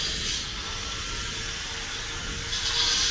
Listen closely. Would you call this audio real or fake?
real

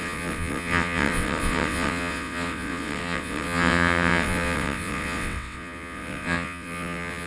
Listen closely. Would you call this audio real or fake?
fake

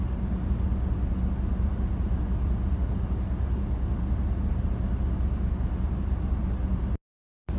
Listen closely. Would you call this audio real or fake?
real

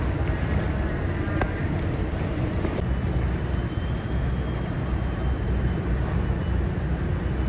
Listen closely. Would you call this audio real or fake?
real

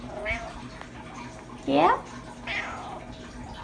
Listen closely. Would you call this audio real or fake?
real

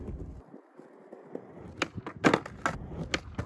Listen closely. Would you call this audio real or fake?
real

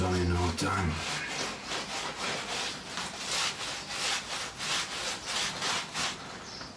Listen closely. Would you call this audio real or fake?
real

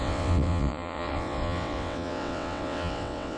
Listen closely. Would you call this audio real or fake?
fake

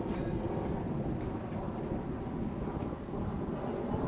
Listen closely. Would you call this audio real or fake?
real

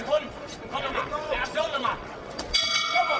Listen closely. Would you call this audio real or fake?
fake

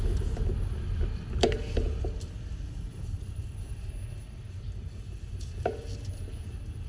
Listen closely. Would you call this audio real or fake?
real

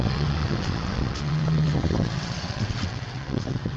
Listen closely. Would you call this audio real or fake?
fake